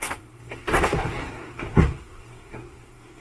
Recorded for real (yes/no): no